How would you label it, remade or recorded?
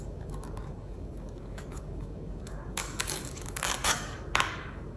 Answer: remade